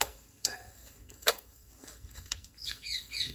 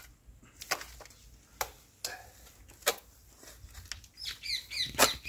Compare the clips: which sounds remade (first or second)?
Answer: first